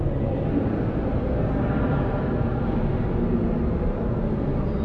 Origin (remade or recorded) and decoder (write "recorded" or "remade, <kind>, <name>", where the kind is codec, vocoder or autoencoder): recorded